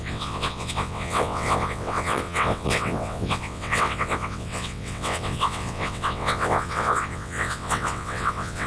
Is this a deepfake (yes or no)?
yes